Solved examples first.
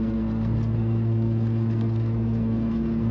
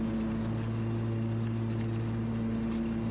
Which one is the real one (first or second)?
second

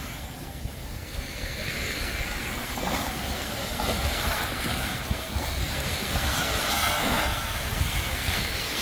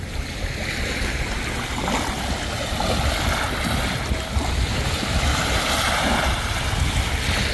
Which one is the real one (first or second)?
second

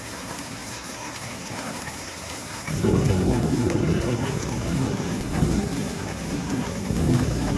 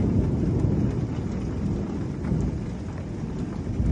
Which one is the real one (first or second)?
second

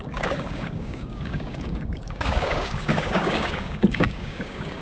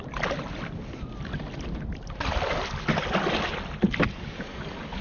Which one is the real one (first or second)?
second